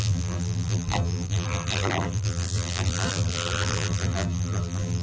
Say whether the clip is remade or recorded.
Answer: remade